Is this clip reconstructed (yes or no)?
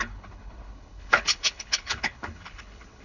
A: yes